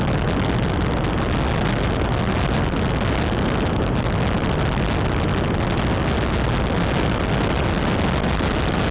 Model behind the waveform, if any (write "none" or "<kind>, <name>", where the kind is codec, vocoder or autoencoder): none